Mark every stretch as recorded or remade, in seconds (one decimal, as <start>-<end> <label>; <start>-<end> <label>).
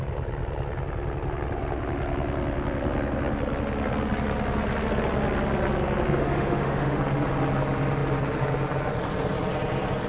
0.0-6.2 recorded; 6.2-7.0 remade; 7.0-10.1 recorded